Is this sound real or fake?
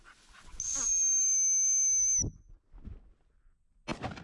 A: real